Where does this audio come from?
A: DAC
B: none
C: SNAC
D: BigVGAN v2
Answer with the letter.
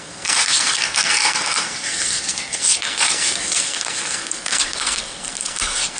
C